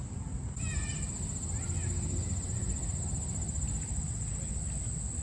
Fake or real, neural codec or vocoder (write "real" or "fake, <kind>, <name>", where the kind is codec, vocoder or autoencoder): real